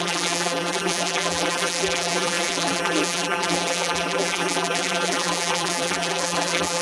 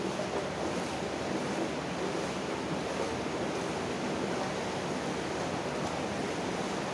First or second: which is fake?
first